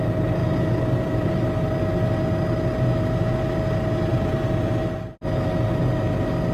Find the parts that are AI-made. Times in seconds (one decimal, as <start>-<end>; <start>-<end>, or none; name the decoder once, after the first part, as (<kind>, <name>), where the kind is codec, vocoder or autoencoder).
0.4-1.5 (vocoder, BigVGAN v2); 4.1-4.7